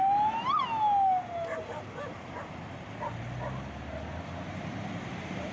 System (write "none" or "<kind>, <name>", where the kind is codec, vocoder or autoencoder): none